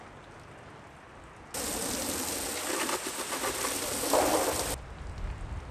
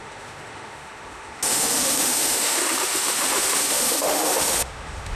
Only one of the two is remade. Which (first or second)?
second